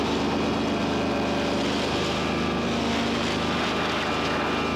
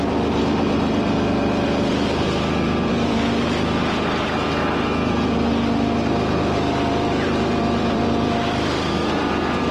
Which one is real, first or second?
first